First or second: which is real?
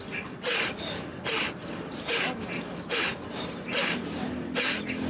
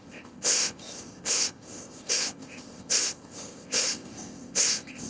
first